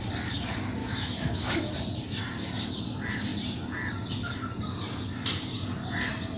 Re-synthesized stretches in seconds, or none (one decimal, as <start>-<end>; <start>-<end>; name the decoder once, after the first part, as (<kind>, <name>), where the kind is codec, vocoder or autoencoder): 0.8-1.7 (autoencoder, DAC-VAE)